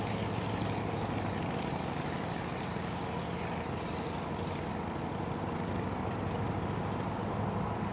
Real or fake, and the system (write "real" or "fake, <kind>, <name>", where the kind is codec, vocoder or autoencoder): real